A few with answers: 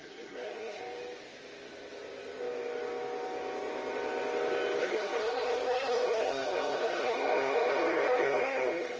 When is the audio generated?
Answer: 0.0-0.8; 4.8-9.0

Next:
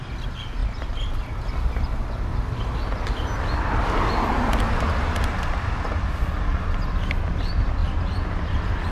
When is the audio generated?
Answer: none

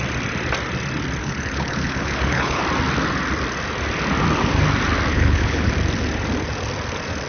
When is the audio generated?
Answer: 1.2-2.6; 5.1-5.7

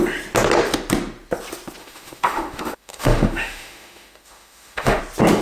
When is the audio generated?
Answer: 1.8-5.0